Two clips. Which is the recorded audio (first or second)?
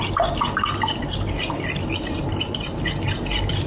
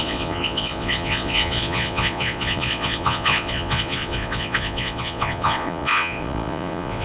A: first